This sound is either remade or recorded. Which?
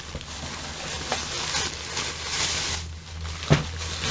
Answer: recorded